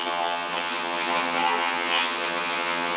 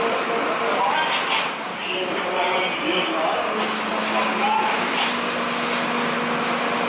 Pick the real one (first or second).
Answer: second